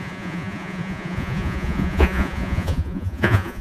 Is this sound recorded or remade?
remade